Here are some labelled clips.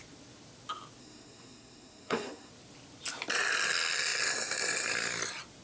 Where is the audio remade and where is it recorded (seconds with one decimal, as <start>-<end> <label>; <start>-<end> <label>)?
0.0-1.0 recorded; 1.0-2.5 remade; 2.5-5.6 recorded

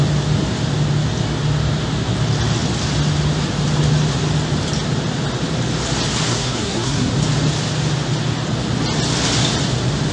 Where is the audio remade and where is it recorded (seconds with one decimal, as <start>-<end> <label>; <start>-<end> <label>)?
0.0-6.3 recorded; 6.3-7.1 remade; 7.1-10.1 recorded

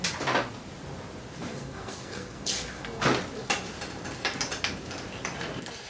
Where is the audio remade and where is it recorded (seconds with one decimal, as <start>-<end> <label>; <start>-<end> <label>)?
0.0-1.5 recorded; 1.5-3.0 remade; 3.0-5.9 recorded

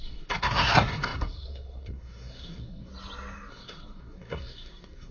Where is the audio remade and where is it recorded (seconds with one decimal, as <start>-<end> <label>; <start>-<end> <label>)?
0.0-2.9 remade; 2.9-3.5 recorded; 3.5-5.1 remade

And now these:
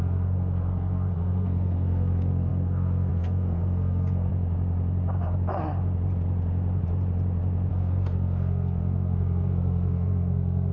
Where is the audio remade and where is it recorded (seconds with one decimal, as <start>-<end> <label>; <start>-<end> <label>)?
0.0-4.3 remade; 4.3-7.7 recorded; 7.7-10.7 remade

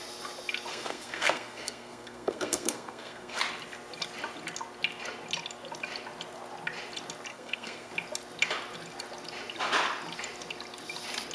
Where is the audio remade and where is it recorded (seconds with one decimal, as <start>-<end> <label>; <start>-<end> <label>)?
0.0-0.7 recorded; 0.7-3.4 remade; 3.4-7.3 recorded; 7.3-7.9 remade; 7.9-11.3 recorded